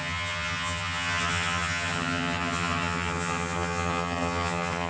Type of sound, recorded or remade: remade